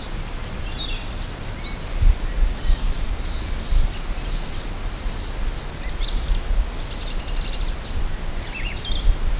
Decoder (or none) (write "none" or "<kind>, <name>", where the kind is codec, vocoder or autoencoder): none